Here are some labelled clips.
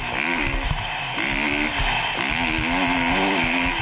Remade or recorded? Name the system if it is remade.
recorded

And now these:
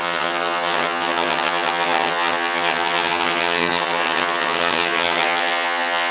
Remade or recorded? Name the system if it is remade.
remade, vocoder, HiFi-GAN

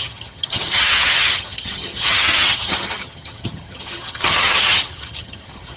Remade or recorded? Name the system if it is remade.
remade, vocoder, HiFi-GAN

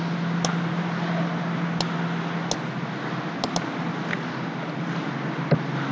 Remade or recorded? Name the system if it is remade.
recorded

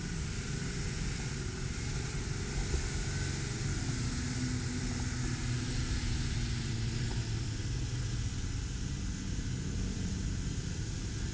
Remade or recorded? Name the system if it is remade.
recorded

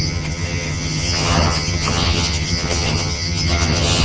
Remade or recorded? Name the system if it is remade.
remade, vocoder, HiFi-GAN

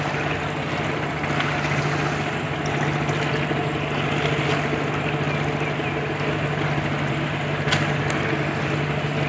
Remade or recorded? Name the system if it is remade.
recorded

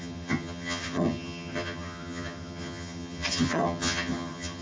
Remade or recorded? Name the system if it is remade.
remade, vocoder, HiFi-GAN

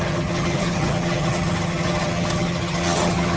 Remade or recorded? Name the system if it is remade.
remade, vocoder, HiFi-GAN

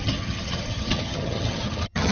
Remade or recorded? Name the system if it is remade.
remade, vocoder, HiFi-GAN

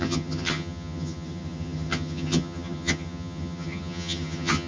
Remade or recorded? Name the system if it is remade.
remade, vocoder, HiFi-GAN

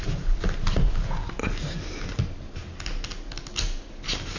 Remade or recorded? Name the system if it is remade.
recorded